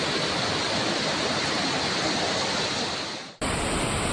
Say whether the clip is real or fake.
real